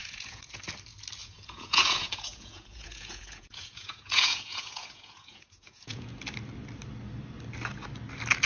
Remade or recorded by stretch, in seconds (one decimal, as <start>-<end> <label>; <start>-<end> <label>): 0.0-0.6 remade; 0.6-1.2 recorded; 1.2-6.1 remade; 6.1-8.5 recorded